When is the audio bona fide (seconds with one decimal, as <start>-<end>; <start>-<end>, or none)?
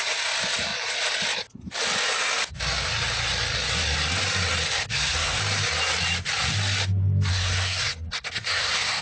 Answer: 0.0-4.8; 5.4-7.3